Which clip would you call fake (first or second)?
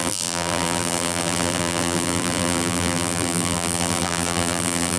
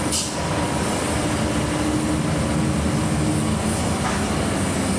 first